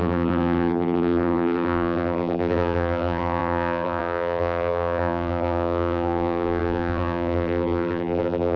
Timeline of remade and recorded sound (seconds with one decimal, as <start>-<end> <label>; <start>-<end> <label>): 0.0-8.6 remade